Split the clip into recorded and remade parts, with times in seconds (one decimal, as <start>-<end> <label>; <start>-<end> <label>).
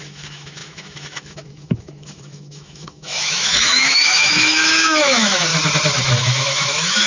0.0-5.5 remade; 5.5-6.2 recorded; 6.2-7.1 remade